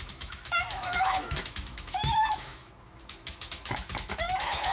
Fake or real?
fake